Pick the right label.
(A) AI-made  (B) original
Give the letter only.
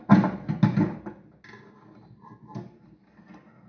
B